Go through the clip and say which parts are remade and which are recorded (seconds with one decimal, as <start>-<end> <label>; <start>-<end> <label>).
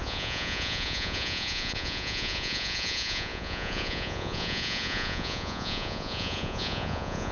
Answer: 0.0-7.3 remade